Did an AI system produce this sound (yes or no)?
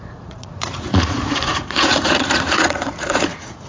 yes